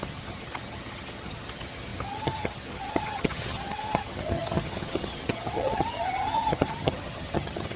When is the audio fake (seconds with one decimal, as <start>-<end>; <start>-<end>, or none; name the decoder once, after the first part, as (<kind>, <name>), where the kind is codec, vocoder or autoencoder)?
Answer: 0.0-7.8 (vocoder, HiFi-GAN)